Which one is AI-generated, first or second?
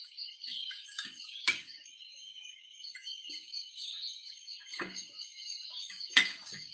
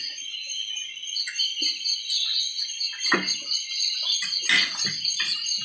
first